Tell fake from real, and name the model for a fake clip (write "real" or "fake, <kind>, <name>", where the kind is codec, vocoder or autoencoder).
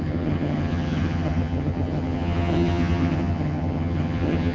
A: fake, vocoder, HiFi-GAN